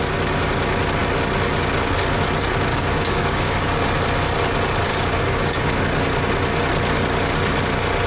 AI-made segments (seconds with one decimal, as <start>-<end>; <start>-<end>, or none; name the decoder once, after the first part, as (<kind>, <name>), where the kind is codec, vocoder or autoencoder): 2.7-3.6 (codec, DAC); 4.9-5.8